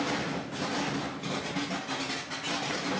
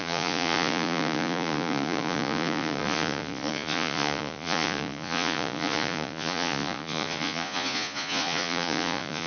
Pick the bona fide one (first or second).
first